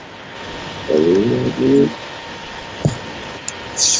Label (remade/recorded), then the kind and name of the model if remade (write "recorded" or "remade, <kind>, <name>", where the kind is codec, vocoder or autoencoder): recorded